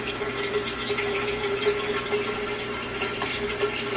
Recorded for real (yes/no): yes